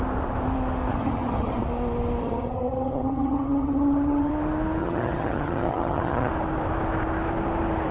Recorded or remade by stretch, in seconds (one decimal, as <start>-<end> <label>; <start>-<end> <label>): 0.0-0.9 recorded; 0.9-1.6 remade; 1.6-2.2 recorded; 2.2-4.3 remade; 4.3-4.8 recorded; 4.8-6.3 remade; 6.3-7.9 recorded